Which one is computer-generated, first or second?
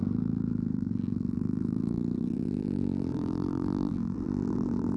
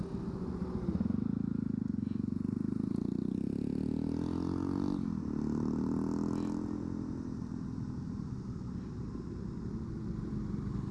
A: first